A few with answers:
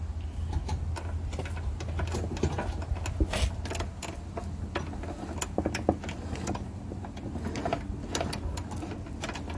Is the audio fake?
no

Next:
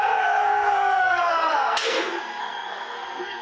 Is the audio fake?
yes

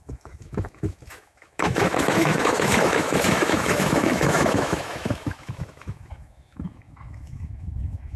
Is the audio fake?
yes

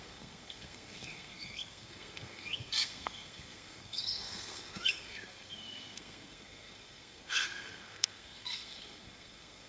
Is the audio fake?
yes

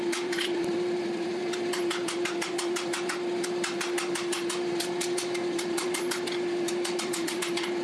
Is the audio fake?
yes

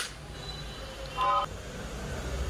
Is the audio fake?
yes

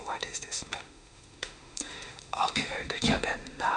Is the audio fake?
yes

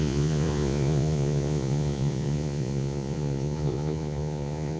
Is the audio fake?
yes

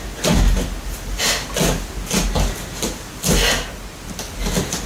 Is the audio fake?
no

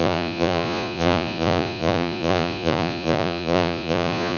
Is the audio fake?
yes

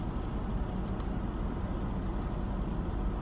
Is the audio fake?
no